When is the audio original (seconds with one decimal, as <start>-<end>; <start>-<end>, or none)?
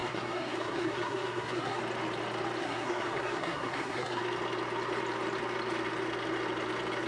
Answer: 1.8-2.6; 4.2-7.1